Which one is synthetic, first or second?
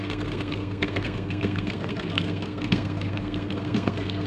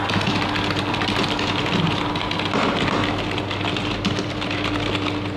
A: first